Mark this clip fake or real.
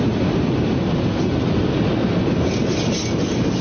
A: real